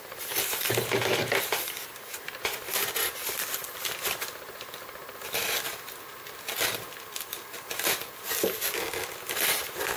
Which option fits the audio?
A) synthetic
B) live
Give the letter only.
B